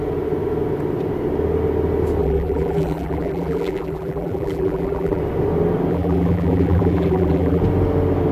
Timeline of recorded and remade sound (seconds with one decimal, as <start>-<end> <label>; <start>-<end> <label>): 0.0-2.2 recorded; 2.2-5.2 remade; 5.2-5.9 recorded; 5.9-7.6 remade; 7.6-8.3 recorded